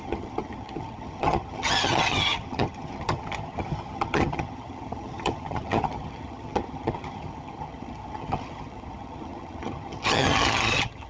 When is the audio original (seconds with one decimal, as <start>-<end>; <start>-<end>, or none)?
none